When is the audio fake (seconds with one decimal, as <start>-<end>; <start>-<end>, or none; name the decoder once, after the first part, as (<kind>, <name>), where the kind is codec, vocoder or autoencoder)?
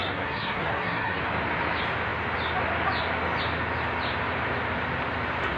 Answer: 0.0-1.2 (codec, SNAC)